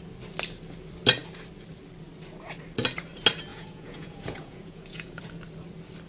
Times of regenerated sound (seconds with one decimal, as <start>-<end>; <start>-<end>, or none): 3.5-5.2